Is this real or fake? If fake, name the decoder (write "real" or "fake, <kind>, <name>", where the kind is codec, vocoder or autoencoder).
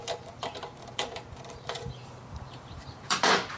fake, vocoder, BigVGAN v2